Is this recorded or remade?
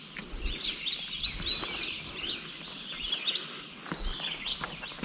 recorded